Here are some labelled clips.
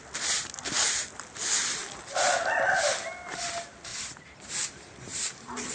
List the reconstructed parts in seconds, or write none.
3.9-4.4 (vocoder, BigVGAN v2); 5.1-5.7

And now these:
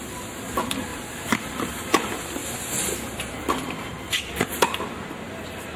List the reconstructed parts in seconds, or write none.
0.0-2.4 (vocoder, BigVGAN v2); 3.3-5.8

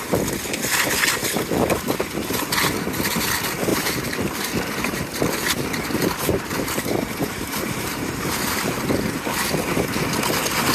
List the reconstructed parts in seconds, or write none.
3.7-8.8 (vocoder, BigVGAN v2)

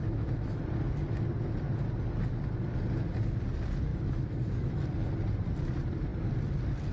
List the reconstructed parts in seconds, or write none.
0.0-0.6 (autoencoder, DAC-VAE); 3.9-4.8

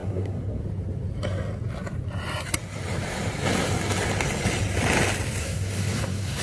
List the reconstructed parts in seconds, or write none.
0.0-0.6 (codec, SNAC); 5.4-6.4

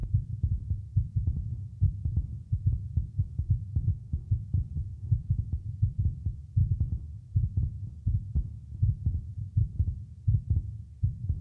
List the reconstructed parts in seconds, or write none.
3.9-4.4 (codec, SNAC); 4.9-5.4